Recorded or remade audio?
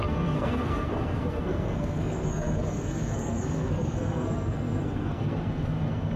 remade